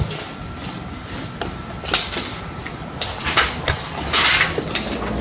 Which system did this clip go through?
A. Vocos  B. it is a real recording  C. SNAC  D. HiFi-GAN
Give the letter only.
B